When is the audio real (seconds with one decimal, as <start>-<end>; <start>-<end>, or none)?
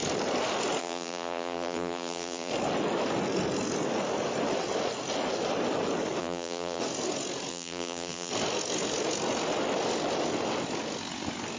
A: 0.0-0.8; 2.5-6.2; 6.8-7.5; 8.3-11.6